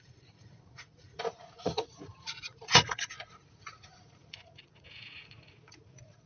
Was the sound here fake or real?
fake